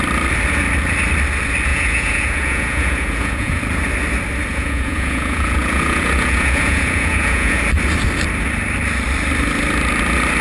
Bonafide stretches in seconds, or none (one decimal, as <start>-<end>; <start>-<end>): 0.0-1.7; 3.6-4.5; 7.6-10.4